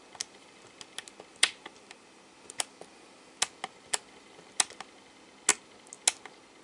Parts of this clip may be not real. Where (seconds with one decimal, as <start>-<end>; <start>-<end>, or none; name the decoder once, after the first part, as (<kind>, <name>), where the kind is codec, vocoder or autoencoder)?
1.3-3.4 (vocoder, BigVGAN v2)